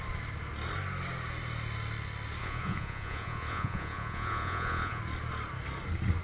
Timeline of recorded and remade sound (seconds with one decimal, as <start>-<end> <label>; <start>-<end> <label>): 0.0-2.4 recorded; 2.4-5.0 remade; 5.0-6.2 recorded